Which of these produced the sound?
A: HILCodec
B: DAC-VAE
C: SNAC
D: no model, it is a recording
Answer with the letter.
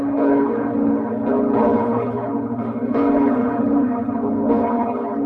A